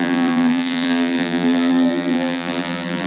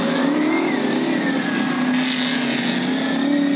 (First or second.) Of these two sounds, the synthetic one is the first